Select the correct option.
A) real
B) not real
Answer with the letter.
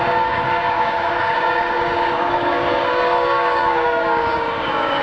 B